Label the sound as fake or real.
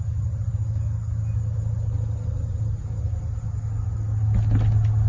real